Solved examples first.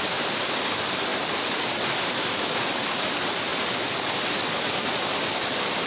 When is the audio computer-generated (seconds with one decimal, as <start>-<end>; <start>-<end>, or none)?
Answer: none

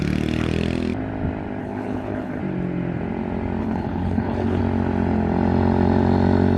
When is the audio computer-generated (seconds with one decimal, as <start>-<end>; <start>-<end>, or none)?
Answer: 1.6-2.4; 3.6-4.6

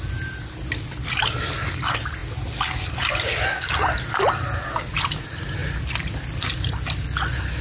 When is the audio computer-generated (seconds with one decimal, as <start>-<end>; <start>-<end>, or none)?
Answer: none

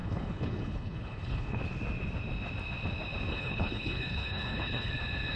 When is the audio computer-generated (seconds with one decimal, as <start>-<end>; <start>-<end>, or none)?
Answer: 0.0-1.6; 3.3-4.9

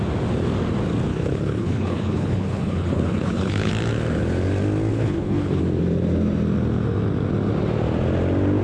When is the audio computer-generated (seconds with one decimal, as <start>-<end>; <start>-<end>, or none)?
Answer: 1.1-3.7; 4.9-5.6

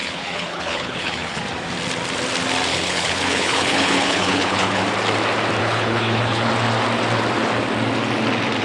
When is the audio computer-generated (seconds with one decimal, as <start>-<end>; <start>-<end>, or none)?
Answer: 0.0-1.4; 2.7-4.8; 5.6-6.5

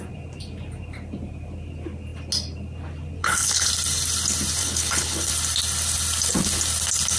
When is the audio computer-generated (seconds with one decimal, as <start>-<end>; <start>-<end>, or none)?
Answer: 3.2-3.7; 4.6-5.3